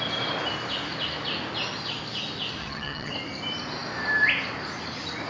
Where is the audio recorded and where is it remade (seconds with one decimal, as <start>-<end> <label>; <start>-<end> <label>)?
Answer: 0.0-2.6 recorded; 2.6-3.1 remade; 3.1-5.3 recorded